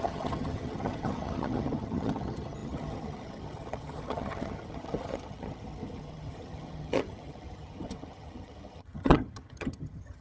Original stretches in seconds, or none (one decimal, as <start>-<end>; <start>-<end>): none